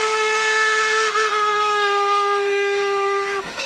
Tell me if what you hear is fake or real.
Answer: fake